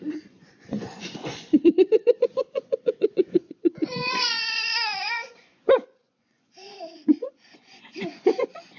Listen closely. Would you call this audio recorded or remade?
remade